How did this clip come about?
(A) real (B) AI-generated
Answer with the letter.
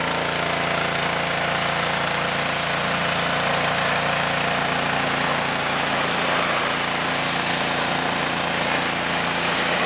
A